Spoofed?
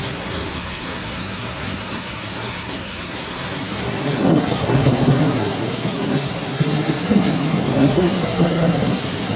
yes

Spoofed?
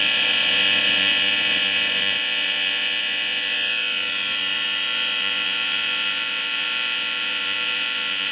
yes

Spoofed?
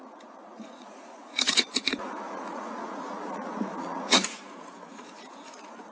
yes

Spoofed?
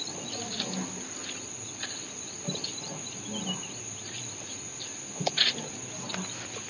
no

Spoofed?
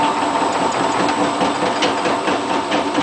no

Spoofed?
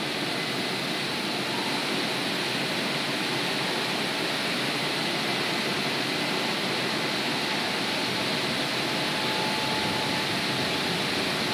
no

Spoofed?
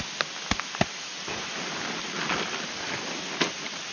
no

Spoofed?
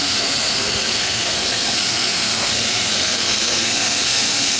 yes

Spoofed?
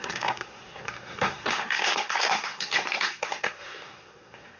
yes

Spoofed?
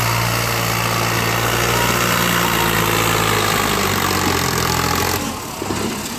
no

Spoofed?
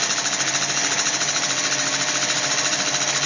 no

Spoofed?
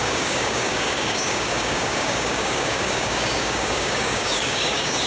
yes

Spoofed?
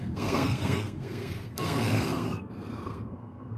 yes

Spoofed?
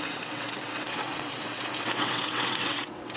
yes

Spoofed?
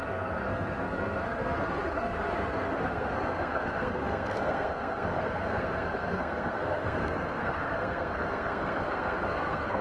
yes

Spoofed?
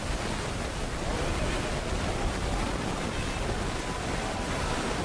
no